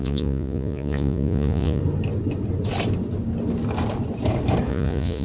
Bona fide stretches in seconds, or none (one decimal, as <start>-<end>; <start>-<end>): 1.8-4.7